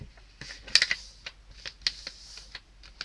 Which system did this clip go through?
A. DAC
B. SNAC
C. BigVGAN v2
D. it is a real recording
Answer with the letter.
D